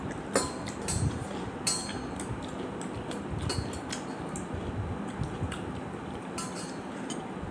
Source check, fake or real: real